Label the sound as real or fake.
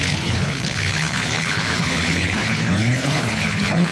fake